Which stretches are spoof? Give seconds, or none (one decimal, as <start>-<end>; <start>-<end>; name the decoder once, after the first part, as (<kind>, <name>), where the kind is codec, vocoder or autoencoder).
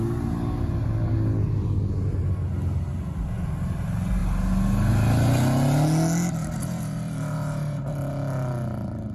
6.4-8.1 (vocoder, BigVGAN v2)